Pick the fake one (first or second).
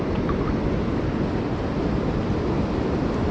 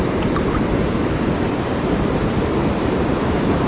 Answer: second